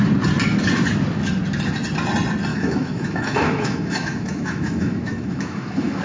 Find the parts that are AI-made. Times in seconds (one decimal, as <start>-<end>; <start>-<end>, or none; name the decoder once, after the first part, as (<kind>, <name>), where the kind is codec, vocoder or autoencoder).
2.5-6.0 (autoencoder, DAC-VAE)